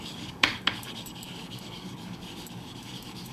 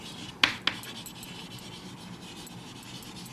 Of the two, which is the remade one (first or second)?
first